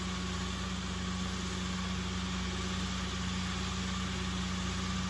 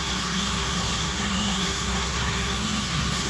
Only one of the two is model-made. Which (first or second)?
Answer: second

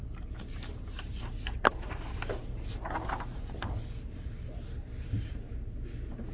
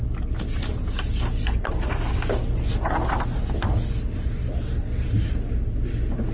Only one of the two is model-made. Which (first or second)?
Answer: first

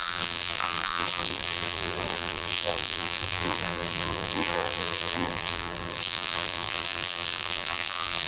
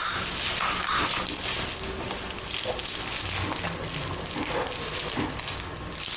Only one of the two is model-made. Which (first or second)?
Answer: first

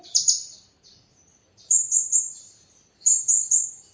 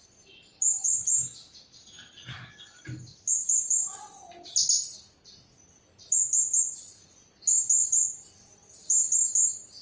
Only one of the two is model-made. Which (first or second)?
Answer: first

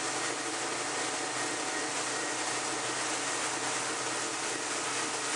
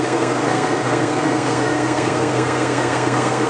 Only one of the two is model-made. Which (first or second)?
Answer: second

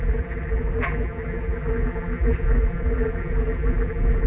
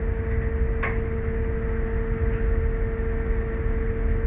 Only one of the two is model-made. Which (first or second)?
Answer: first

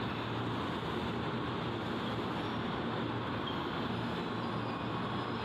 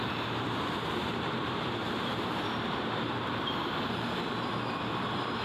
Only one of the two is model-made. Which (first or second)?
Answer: second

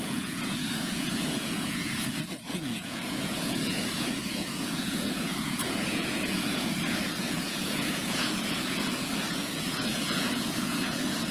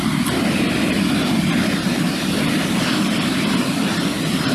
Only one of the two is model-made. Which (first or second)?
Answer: first